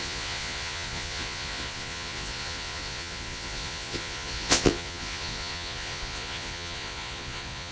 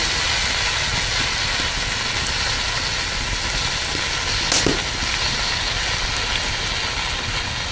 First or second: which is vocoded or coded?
first